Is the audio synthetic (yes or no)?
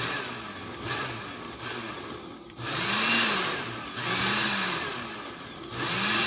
no